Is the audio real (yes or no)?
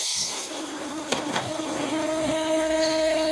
no